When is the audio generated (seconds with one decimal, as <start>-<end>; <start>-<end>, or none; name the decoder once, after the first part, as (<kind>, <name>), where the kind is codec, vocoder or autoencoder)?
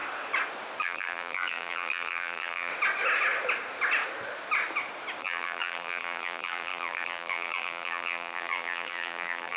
0.8-2.7 (vocoder, BigVGAN v2); 5.2-9.6